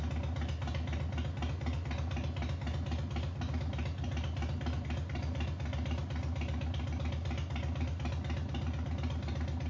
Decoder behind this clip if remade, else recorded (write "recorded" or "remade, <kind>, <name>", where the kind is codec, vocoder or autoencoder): recorded